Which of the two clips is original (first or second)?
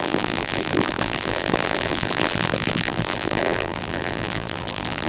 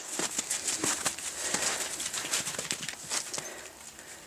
second